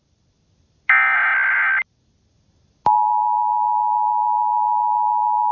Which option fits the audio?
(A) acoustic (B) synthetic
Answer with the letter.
A